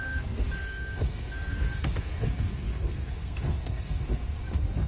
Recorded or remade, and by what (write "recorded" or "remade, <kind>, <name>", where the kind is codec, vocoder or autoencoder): remade, codec, SNAC